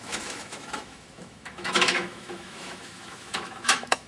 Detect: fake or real fake